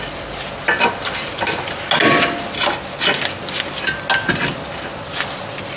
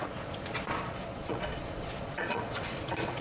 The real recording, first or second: first